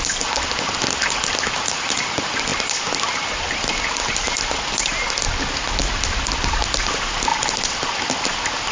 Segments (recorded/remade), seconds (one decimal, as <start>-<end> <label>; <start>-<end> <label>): 0.0-8.7 recorded

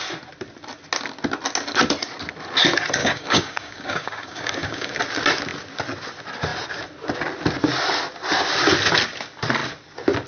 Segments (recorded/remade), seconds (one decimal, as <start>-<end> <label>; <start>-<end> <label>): 0.0-3.0 recorded; 3.0-5.0 remade; 5.0-10.3 recorded